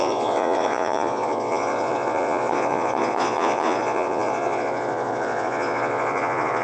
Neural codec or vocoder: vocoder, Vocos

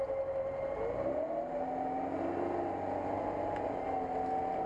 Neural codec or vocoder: none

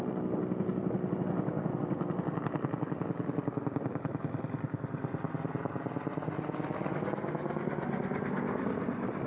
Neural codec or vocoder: none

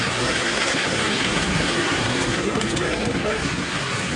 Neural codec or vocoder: codec, SNAC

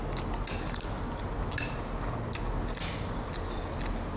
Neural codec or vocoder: none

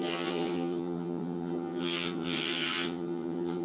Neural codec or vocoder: vocoder, HiFi-GAN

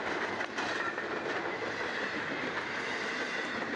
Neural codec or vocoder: none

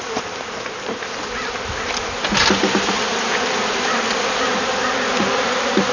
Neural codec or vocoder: none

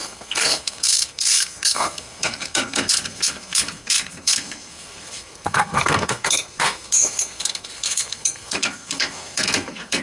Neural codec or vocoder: codec, SNAC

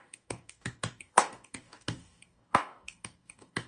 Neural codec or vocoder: codec, DAC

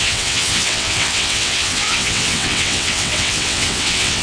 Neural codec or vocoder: vocoder, WaveNeXt